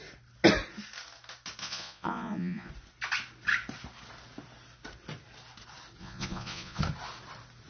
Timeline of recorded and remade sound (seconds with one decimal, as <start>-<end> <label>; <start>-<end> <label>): 0.0-1.6 recorded; 1.6-2.7 remade; 2.7-6.0 recorded; 6.0-6.8 remade; 6.8-7.7 recorded